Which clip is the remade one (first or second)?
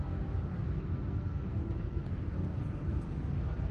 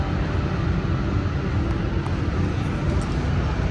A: first